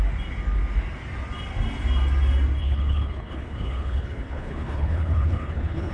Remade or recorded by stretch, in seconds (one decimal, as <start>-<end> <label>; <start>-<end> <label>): 0.0-2.6 recorded; 2.6-5.9 remade